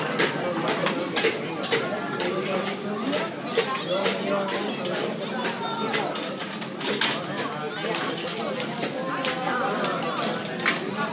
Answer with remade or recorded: recorded